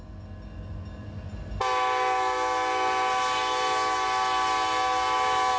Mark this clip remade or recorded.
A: recorded